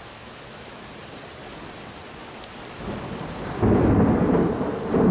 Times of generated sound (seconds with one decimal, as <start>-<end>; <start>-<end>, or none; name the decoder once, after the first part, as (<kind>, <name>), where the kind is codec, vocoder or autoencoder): 0.0-0.9 (autoencoder, DAC-VAE)